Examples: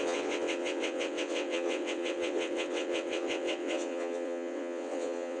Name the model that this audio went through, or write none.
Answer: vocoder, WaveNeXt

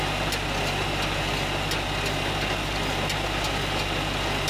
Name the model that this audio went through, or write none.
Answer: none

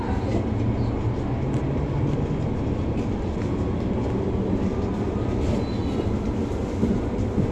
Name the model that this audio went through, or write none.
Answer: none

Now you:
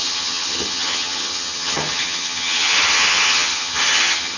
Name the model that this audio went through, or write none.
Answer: vocoder, HiFi-GAN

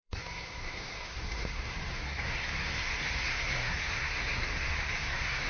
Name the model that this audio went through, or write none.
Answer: codec, SNAC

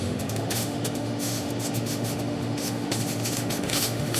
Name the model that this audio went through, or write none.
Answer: autoencoder, DAC-VAE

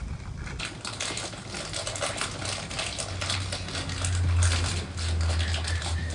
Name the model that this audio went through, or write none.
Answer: none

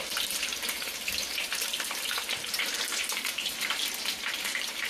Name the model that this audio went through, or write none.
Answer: vocoder, BigVGAN v2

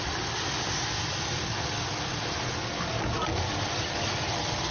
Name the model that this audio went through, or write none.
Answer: none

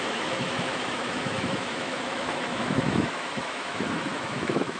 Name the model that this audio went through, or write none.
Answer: autoencoder, DAC-VAE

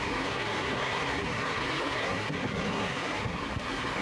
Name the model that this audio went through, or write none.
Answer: codec, SNAC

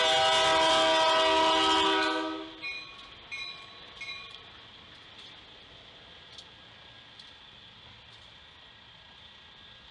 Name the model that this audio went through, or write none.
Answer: none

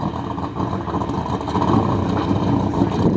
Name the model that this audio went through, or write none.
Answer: none